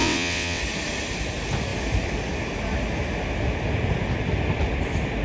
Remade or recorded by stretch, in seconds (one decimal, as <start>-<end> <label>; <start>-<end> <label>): 0.0-0.6 remade; 0.6-5.2 recorded